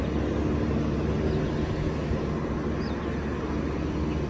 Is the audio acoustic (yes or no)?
yes